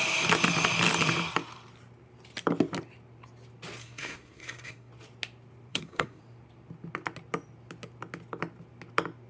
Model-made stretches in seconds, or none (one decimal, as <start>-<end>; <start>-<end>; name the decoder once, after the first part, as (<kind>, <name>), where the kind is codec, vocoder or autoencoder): 3.8-4.9 (codec, SNAC); 5.7-6.2